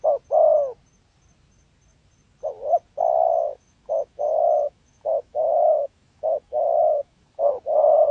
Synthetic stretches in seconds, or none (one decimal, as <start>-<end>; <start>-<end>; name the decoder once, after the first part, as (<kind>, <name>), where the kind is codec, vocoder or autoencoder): 3.2-7.4 (autoencoder, DAC-VAE)